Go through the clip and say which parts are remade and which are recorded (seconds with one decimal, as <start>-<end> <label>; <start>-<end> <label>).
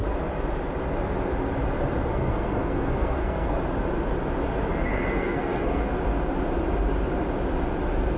0.0-2.1 recorded; 2.1-3.5 remade; 3.5-4.9 recorded; 4.9-5.8 remade; 5.8-8.2 recorded